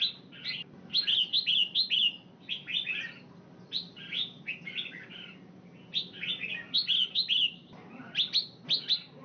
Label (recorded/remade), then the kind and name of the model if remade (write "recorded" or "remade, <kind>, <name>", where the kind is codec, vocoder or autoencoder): recorded